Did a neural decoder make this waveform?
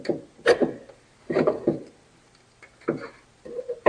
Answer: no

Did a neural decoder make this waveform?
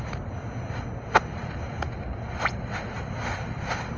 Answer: no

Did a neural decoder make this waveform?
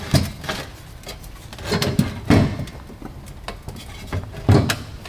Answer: no